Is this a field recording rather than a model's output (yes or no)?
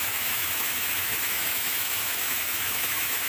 no